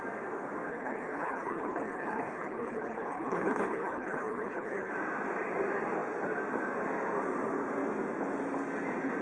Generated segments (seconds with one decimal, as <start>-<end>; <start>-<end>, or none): 0.7-4.9

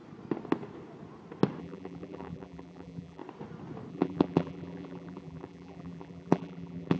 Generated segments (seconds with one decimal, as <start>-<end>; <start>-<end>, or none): 1.6-3.2; 3.9-7.0